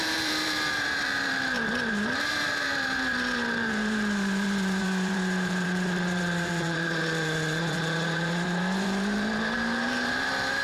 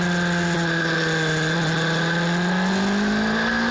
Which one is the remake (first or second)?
first